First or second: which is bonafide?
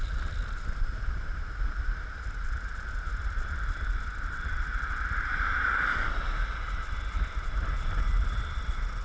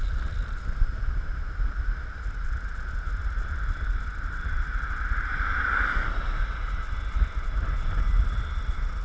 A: second